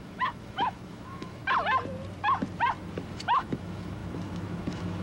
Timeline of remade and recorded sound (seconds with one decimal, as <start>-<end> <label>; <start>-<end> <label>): 0.0-1.4 remade; 1.4-3.1 recorded; 3.1-5.0 remade